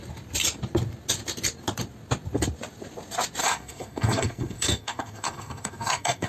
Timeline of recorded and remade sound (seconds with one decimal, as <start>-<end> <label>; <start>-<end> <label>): 0.0-3.4 recorded; 3.4-6.3 remade